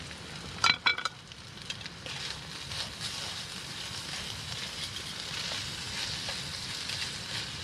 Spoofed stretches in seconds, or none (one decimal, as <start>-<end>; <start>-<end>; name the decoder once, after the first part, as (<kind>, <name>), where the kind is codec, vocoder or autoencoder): none